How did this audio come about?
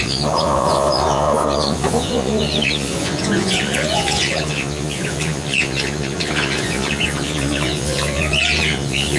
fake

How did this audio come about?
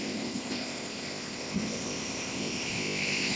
fake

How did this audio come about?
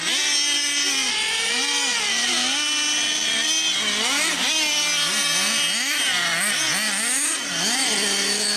real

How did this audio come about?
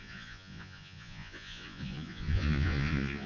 fake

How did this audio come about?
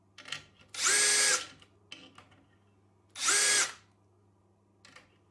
real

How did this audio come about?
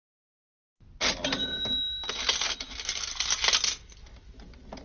real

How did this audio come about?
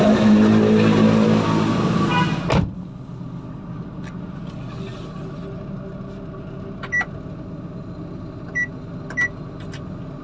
real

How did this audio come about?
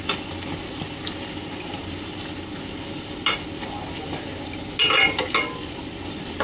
real